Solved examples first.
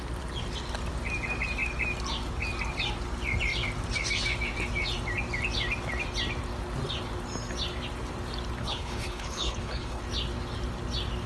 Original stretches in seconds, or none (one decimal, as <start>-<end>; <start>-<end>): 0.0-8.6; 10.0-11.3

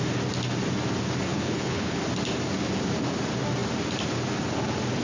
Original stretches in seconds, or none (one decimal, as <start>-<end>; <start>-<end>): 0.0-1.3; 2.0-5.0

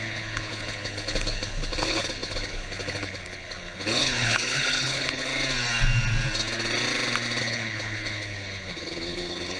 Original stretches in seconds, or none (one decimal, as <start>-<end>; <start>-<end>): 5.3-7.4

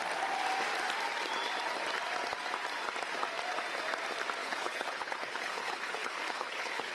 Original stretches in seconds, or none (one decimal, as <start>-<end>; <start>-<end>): 0.0-4.4

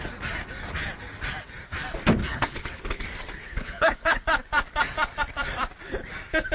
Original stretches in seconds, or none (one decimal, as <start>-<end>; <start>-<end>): 0.0-2.2; 3.0-3.4; 4.2-6.5